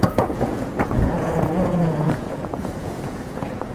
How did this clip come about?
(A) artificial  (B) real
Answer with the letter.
A